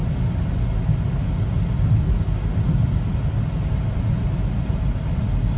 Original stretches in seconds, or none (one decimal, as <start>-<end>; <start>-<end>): 0.0-5.6